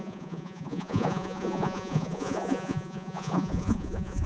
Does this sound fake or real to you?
fake